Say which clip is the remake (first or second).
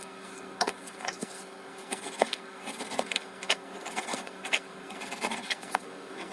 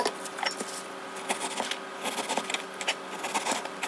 first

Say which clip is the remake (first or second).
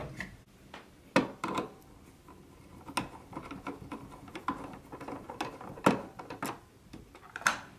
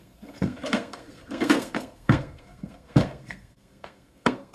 second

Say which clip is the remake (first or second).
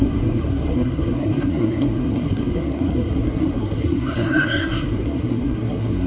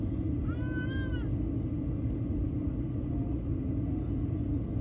first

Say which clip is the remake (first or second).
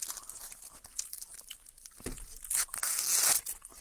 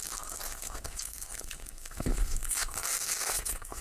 second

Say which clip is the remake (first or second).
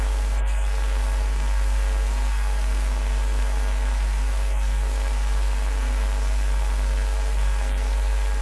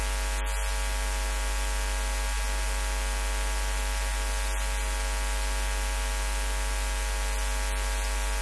first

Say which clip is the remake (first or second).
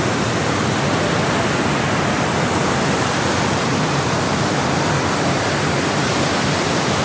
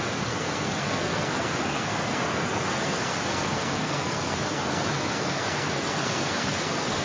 second